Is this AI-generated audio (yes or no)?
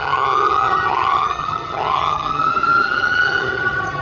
yes